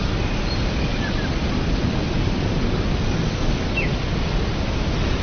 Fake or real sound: real